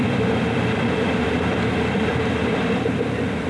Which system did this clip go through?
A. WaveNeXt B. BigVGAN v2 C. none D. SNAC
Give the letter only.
B